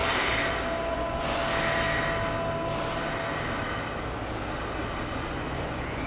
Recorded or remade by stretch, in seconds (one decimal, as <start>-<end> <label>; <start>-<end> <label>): 0.0-0.9 recorded; 0.9-1.4 remade; 1.4-5.1 recorded; 5.1-6.1 remade